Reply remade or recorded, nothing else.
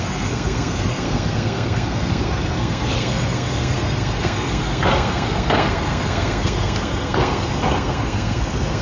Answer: remade